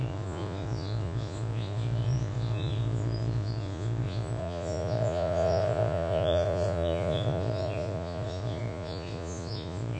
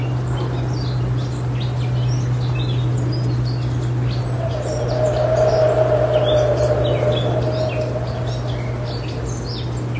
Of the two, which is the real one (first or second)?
second